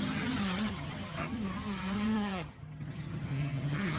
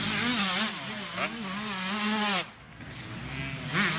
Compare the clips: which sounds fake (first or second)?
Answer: first